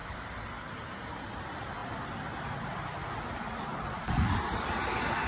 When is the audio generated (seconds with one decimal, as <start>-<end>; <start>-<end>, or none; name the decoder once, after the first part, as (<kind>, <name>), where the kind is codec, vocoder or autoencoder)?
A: 1.8-4.7 (vocoder, BigVGAN v2)